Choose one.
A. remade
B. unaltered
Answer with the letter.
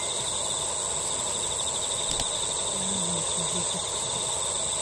B